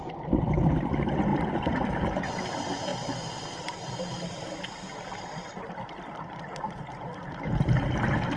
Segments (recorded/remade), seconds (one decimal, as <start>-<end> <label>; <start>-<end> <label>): 0.0-1.3 recorded; 1.3-2.3 remade; 2.3-2.9 recorded; 2.9-3.8 remade; 3.8-8.4 recorded